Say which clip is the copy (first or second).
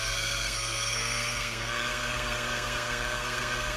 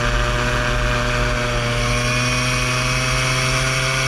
first